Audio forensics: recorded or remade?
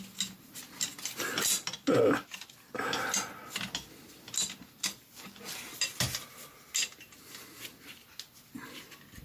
recorded